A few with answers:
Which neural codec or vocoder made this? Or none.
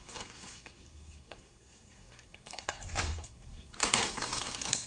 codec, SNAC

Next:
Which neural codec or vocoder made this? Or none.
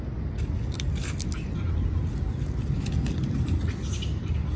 none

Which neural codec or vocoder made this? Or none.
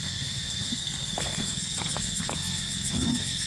codec, SNAC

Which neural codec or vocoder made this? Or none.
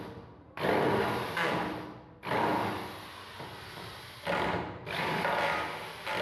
none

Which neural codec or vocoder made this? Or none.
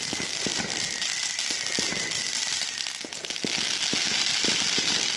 none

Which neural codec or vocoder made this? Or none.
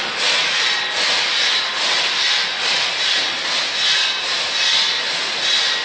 none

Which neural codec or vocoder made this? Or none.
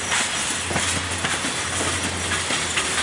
none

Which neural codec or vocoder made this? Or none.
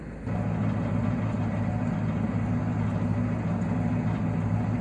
none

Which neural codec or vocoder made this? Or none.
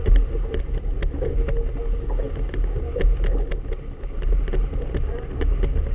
none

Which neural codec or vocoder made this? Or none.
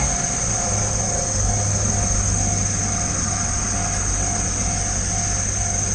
none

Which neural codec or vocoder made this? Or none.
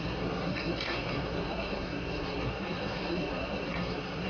codec, SNAC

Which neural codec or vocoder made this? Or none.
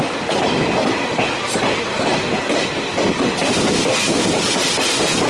none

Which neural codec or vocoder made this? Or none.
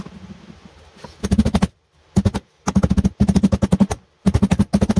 none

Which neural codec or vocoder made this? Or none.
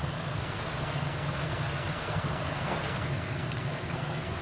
codec, SNAC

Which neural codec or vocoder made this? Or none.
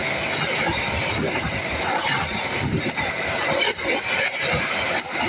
none